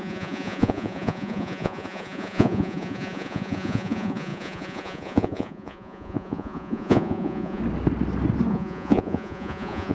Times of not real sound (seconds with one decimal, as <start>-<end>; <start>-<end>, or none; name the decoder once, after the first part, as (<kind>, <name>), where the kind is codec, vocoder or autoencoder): 0.0-7.6 (vocoder, Vocos); 8.5-9.9